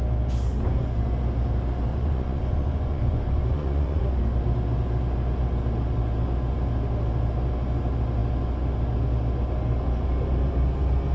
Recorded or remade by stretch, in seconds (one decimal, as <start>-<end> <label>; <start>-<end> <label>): 0.0-1.9 recorded; 1.9-4.0 remade; 4.0-11.1 recorded